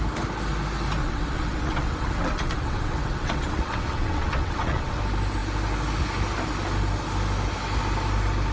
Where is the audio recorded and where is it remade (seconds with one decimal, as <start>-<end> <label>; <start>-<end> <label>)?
0.0-1.0 recorded; 1.0-5.0 remade; 5.0-8.5 recorded